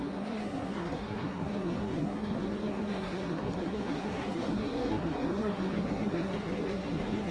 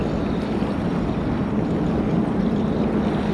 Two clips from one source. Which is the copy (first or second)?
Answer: first